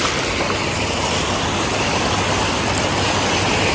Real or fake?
real